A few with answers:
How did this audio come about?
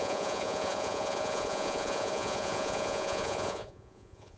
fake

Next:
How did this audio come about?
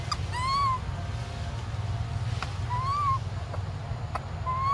real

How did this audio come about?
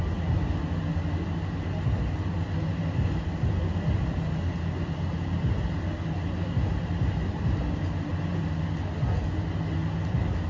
real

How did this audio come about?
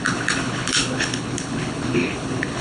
fake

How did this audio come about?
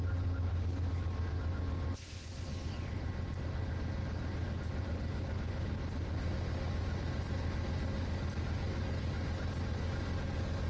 real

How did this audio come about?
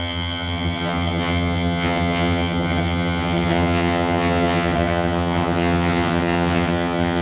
fake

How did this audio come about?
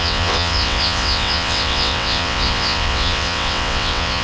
fake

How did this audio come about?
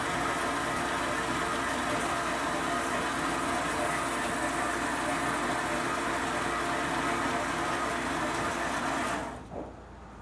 real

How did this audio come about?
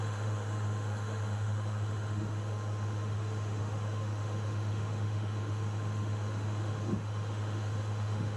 fake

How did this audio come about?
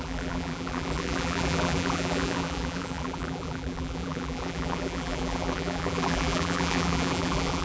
fake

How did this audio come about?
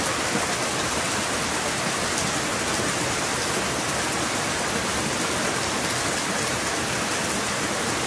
real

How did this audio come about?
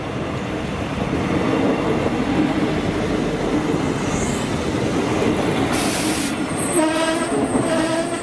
real